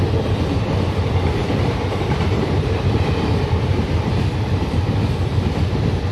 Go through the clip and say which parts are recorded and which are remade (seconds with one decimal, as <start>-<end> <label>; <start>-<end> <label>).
0.0-1.4 recorded; 1.4-4.3 remade; 4.3-6.1 recorded

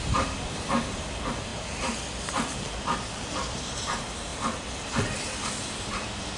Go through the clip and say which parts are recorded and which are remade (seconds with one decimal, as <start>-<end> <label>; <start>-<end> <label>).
0.0-6.4 recorded

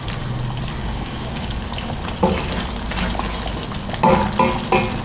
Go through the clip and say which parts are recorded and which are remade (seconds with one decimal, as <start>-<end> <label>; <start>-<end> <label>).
0.0-0.8 recorded; 0.8-1.6 remade; 1.6-5.0 recorded

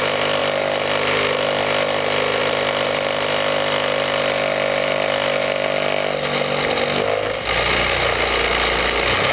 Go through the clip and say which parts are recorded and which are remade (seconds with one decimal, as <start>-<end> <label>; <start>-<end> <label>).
0.0-9.3 recorded

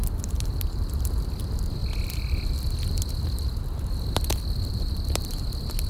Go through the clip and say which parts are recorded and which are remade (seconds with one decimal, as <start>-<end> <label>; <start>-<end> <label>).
0.0-1.4 remade; 1.4-4.3 recorded; 4.3-5.3 remade; 5.3-5.9 recorded

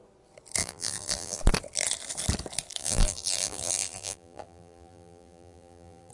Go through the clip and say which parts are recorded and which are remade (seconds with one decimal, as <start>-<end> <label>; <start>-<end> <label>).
0.0-0.6 recorded; 0.6-1.4 remade; 1.4-2.8 recorded; 2.8-6.1 remade

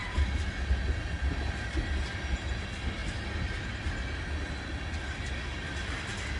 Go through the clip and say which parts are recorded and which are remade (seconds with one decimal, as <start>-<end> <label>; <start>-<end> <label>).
0.0-6.4 recorded

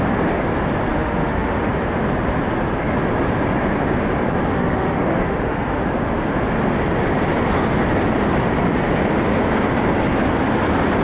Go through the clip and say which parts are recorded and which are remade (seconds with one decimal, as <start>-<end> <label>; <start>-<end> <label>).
0.0-0.9 recorded; 0.9-1.7 remade; 1.7-4.5 recorded; 4.5-5.8 remade; 5.8-11.0 recorded